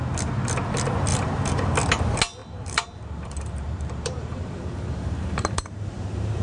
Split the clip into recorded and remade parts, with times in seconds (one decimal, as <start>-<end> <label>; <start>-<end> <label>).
0.0-1.1 recorded; 1.1-1.7 remade; 1.7-2.4 recorded; 2.4-6.4 remade